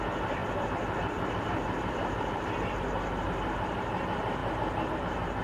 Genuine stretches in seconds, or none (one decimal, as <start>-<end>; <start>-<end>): 0.0-0.4; 2.8-5.4